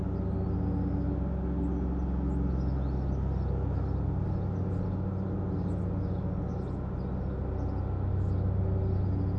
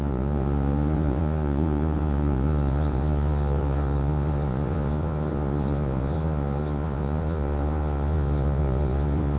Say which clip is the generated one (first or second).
second